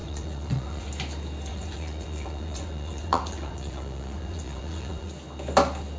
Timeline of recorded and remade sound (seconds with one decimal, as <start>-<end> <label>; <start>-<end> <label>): 0.0-0.9 remade; 0.9-1.5 recorded; 1.5-5.1 remade; 5.1-6.0 recorded